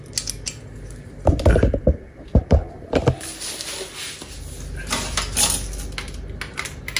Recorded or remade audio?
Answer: recorded